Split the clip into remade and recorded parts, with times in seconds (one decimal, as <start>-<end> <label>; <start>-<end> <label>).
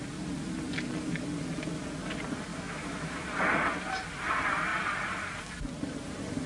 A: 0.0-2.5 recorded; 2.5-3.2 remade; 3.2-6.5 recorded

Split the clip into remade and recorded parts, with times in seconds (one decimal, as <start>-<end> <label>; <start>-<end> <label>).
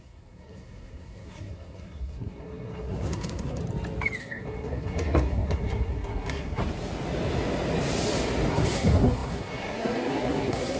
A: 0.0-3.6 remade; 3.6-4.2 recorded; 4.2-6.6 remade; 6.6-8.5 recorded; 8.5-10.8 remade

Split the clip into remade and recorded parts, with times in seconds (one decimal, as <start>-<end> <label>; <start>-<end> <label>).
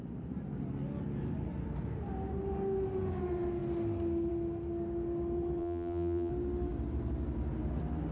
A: 0.0-5.6 recorded; 5.6-6.3 remade; 6.3-8.1 recorded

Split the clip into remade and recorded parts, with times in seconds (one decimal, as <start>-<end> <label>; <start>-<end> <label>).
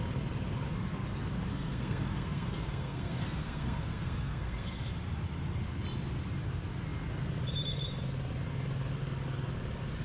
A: 0.0-1.5 recorded; 1.5-4.9 remade; 4.9-10.0 recorded